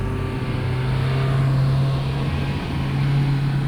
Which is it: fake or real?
real